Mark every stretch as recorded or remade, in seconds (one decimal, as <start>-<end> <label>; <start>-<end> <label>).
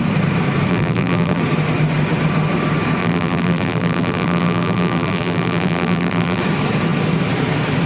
0.0-0.7 recorded; 0.7-1.4 remade; 1.4-3.0 recorded; 3.0-6.4 remade; 6.4-7.9 recorded